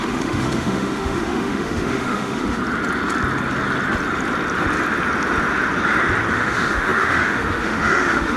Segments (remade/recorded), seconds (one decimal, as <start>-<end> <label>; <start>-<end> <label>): 0.0-2.6 remade; 2.6-6.3 recorded; 6.3-8.4 remade